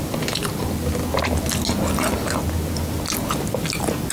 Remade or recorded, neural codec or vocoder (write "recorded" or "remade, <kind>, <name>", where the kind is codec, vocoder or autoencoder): recorded